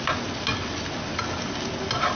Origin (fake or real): real